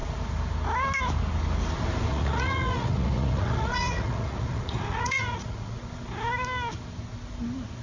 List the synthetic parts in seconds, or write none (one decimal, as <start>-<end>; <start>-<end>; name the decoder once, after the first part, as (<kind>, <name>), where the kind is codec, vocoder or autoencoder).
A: 2.1-5.8 (vocoder, Vocos)